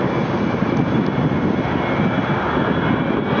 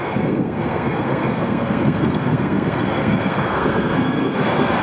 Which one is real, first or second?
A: first